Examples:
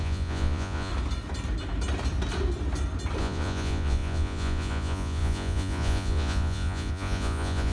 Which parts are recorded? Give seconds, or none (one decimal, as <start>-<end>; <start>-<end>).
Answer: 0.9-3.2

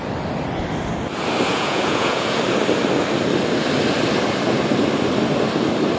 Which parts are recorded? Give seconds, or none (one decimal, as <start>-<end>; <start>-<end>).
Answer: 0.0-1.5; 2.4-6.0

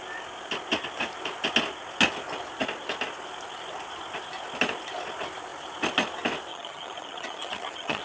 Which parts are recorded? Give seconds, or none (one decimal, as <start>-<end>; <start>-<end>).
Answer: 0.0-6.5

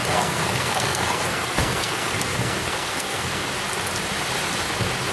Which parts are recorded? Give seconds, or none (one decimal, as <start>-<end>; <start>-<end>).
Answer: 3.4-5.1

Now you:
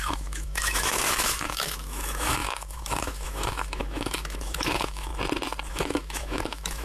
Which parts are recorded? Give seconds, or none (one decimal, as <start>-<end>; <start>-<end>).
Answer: 5.1-5.7

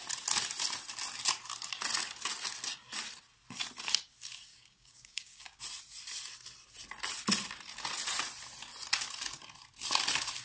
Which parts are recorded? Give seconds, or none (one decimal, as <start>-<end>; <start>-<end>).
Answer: 0.0-4.5; 5.6-10.4